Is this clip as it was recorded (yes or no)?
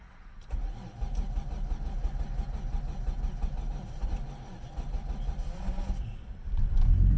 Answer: yes